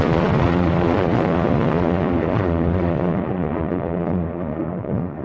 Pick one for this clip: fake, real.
fake